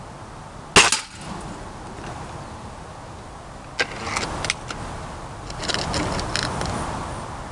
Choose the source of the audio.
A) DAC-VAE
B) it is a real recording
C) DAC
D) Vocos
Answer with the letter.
B